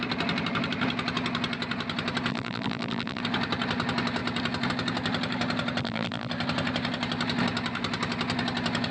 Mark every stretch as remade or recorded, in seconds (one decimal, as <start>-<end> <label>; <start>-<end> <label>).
0.0-2.3 recorded; 2.3-3.2 remade; 3.2-5.8 recorded; 5.8-6.3 remade; 6.3-8.9 recorded